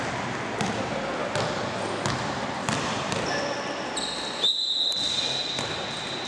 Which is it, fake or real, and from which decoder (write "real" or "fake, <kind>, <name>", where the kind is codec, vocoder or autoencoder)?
real